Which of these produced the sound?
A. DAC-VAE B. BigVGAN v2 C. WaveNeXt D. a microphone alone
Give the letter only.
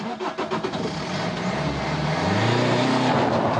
D